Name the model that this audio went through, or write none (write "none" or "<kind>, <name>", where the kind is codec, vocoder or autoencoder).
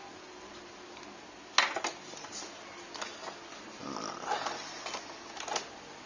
none